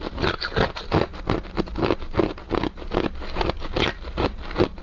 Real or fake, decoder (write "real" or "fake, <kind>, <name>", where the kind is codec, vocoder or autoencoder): real